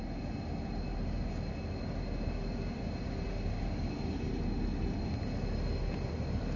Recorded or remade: recorded